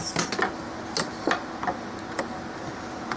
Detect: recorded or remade recorded